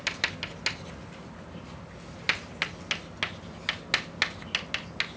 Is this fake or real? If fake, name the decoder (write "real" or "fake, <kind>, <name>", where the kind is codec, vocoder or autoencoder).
real